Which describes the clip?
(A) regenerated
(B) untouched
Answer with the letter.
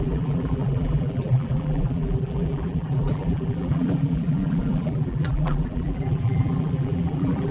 A